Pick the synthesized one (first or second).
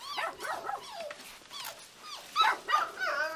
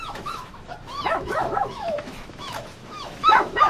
second